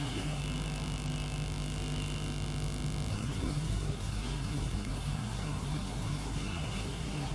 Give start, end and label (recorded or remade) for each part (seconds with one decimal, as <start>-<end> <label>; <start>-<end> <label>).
0.0-0.4 remade; 0.4-3.1 recorded; 3.1-7.3 remade